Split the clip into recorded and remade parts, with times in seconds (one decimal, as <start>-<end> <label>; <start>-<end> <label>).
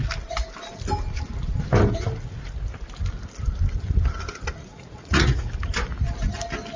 0.0-4.7 recorded; 4.7-5.5 remade; 5.5-6.8 recorded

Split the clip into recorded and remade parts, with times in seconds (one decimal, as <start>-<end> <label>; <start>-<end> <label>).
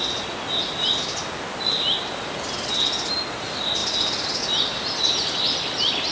0.0-6.1 recorded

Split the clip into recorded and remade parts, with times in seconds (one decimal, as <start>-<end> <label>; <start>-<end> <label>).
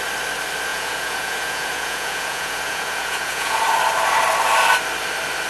0.0-0.7 recorded; 0.7-3.6 remade; 3.6-5.5 recorded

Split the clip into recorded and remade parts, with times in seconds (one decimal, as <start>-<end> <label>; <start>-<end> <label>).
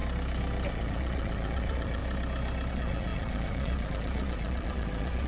0.0-0.7 recorded; 0.7-2.0 remade; 2.0-2.7 recorded; 2.7-5.3 remade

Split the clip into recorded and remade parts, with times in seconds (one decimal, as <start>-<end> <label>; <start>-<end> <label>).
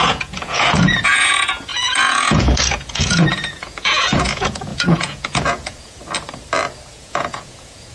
0.0-6.0 remade; 6.0-6.9 recorded; 6.9-7.9 remade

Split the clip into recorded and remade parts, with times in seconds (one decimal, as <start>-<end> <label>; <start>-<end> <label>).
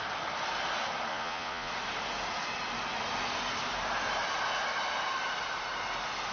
0.0-1.1 recorded; 1.1-1.7 remade; 1.7-6.3 recorded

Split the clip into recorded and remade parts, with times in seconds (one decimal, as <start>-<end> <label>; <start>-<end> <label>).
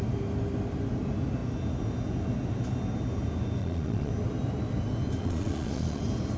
0.0-3.6 recorded; 3.6-4.1 remade; 4.1-5.2 recorded; 5.2-6.0 remade; 6.0-6.4 recorded